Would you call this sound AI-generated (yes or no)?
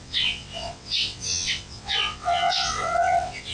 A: yes